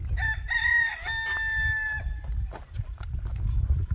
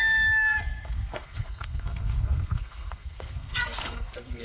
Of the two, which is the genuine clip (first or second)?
first